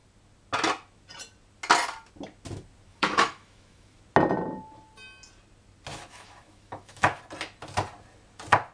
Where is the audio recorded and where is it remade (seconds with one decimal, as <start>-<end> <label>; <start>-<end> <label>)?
0.0-2.9 recorded; 2.9-4.0 remade; 4.0-5.9 recorded; 5.9-7.2 remade; 7.2-8.7 recorded